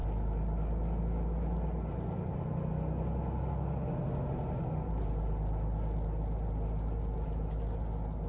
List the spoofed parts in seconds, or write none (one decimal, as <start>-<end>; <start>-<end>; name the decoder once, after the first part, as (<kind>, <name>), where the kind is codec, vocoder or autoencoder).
none